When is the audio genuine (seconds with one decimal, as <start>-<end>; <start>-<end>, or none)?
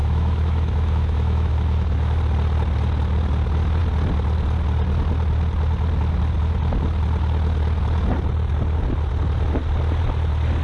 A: 2.2-10.6